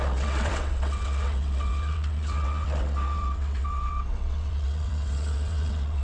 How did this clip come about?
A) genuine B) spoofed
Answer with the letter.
B